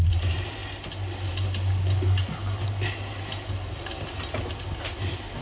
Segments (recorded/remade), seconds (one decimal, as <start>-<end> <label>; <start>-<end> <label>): 0.0-5.4 recorded